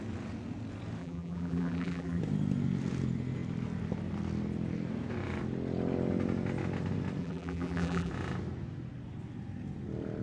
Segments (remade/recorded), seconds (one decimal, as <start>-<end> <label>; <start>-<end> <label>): 0.0-1.0 recorded; 1.0-2.2 remade; 2.2-7.2 recorded; 7.2-8.1 remade; 8.1-10.2 recorded